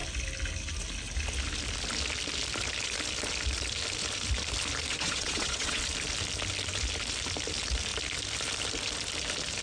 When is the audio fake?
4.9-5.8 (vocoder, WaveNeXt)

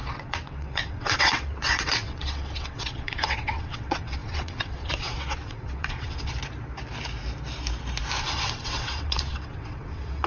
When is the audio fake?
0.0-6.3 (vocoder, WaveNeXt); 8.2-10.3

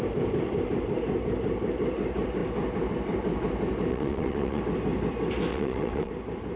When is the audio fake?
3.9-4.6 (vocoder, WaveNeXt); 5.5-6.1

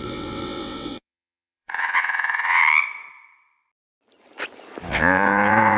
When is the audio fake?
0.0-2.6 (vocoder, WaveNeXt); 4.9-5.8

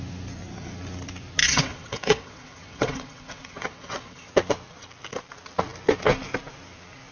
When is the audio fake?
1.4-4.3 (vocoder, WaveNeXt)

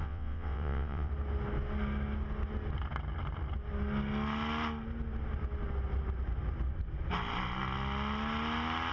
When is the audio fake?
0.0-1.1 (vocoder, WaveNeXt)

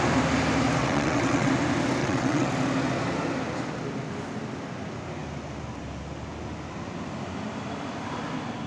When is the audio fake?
0.8-1.5 (vocoder, WaveNeXt); 2.0-2.5